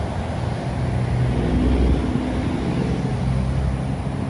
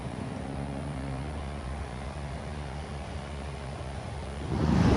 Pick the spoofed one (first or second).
second